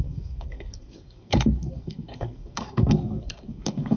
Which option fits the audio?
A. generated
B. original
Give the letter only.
A